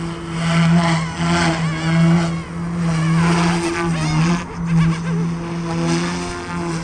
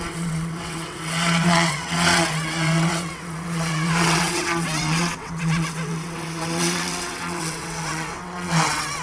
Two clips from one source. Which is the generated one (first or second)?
second